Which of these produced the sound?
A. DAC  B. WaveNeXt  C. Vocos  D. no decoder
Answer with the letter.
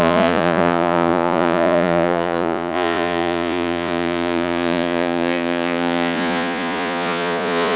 C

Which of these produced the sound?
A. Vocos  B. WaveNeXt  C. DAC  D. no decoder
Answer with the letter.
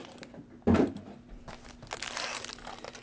D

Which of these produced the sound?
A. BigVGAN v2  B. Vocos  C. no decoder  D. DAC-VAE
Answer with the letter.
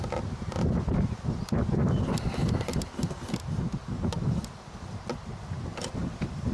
C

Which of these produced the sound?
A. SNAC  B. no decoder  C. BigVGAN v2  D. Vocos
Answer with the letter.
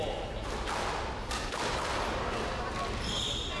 B